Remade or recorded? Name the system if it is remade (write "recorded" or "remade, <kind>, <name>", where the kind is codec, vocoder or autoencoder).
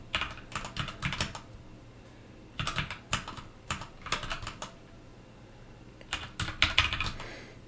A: recorded